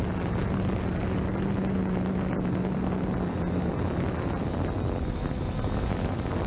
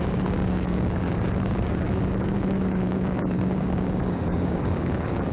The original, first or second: first